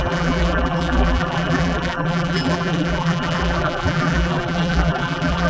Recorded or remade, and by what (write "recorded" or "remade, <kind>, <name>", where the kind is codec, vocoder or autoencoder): remade, vocoder, BigVGAN v2